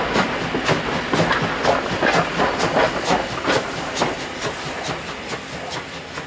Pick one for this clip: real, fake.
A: real